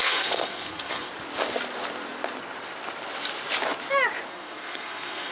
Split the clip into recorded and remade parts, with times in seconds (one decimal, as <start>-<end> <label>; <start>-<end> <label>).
0.0-1.1 remade; 1.1-4.3 recorded; 4.3-5.3 remade